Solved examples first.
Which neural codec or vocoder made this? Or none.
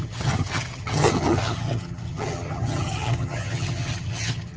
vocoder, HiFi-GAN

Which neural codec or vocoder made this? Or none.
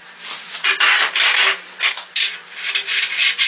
none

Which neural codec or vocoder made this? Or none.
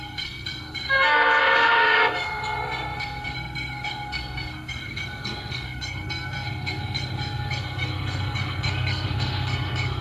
codec, SNAC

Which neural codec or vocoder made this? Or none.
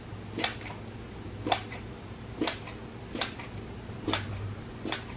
none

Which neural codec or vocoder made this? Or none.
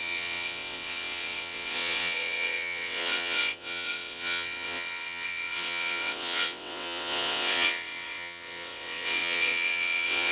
vocoder, WaveNeXt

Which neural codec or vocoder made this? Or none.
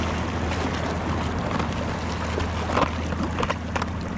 none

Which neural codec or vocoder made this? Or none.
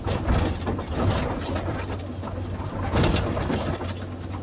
none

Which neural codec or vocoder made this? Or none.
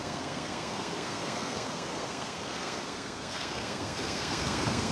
codec, SNAC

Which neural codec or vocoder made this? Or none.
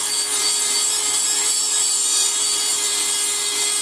vocoder, BigVGAN v2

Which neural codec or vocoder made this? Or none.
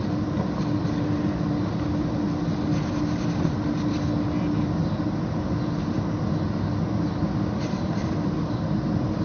none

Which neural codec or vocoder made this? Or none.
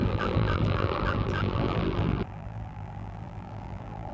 vocoder, BigVGAN v2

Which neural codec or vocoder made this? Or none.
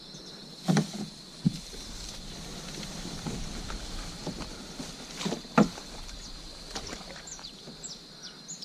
none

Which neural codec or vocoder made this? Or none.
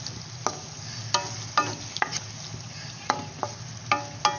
none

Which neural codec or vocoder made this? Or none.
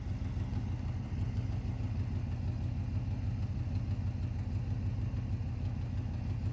none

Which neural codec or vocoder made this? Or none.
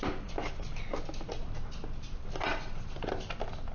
none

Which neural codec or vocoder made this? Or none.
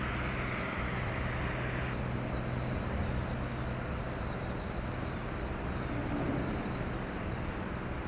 none